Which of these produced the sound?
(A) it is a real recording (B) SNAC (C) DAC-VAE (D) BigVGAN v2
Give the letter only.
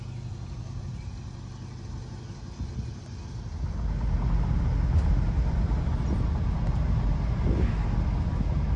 A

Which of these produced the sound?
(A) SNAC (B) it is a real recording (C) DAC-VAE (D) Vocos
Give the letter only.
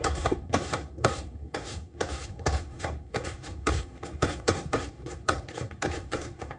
A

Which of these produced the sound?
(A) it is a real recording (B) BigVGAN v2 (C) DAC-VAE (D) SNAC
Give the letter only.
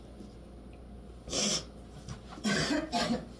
A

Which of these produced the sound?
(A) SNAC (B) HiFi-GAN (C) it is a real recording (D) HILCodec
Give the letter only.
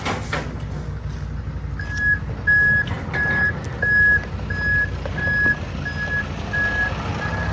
C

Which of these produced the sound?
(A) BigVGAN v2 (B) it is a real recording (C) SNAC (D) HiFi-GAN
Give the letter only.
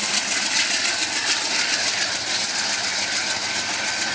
B